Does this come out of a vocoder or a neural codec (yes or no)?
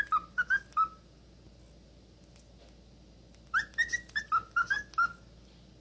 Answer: no